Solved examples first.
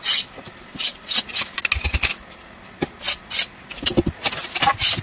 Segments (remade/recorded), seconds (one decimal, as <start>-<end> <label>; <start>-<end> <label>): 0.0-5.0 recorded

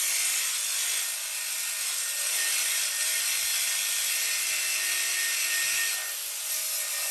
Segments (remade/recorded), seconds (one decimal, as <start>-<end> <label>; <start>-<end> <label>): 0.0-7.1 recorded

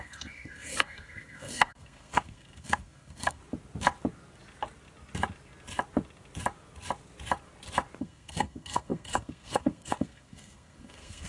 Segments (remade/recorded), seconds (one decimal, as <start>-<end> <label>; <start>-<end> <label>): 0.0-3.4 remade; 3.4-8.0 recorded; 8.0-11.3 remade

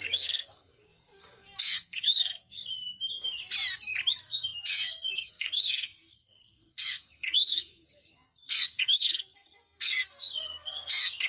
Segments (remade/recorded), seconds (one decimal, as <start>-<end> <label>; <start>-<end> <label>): 0.0-2.7 remade; 2.7-4.2 recorded; 4.2-11.3 remade

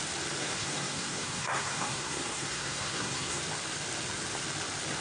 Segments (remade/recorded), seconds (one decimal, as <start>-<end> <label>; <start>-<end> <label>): 0.0-0.4 recorded; 0.4-3.4 remade; 3.4-5.0 recorded